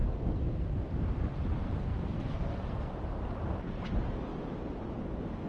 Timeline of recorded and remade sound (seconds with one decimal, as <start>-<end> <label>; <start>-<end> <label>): 0.0-0.8 remade; 0.8-1.5 recorded; 1.5-2.9 remade; 2.9-5.5 recorded